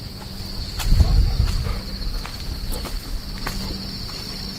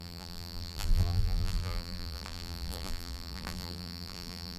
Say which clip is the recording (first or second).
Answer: first